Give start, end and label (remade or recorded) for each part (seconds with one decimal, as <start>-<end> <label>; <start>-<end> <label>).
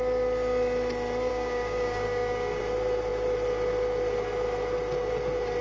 0.0-1.3 recorded; 1.3-2.6 remade; 2.6-5.6 recorded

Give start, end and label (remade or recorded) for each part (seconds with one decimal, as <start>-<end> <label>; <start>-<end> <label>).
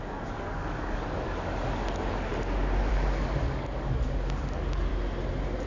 0.0-2.3 remade; 2.3-2.9 recorded; 2.9-4.9 remade; 4.9-5.7 recorded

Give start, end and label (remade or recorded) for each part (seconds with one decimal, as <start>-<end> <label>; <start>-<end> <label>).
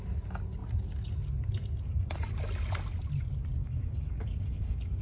0.0-3.6 recorded; 3.6-5.0 remade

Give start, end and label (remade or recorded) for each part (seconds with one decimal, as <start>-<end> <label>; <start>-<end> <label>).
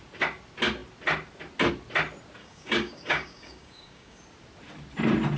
0.0-2.4 recorded; 2.4-4.2 remade; 4.2-5.4 recorded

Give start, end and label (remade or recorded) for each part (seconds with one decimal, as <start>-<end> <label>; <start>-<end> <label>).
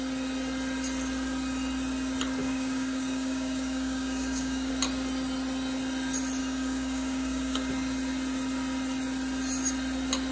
0.0-2.4 recorded; 2.4-4.7 remade; 4.7-6.4 recorded; 6.4-7.7 remade; 7.7-10.3 recorded